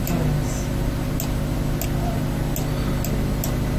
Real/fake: real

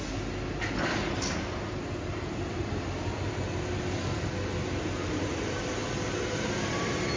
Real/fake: real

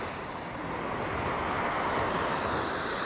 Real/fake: real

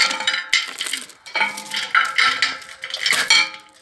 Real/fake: real